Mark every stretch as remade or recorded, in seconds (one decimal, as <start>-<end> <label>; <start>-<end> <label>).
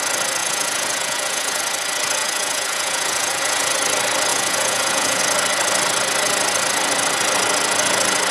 0.0-0.4 recorded; 0.4-1.6 remade; 1.6-2.2 recorded; 2.2-3.7 remade; 3.7-4.3 recorded; 4.3-5.2 remade; 5.2-8.3 recorded